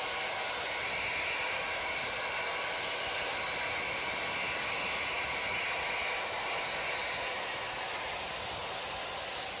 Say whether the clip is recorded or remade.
recorded